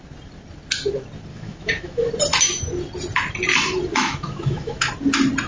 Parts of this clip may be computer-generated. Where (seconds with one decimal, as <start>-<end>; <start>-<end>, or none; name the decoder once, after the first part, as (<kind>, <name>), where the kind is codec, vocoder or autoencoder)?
1.3-2.1 (autoencoder, DAC-VAE); 3.9-4.9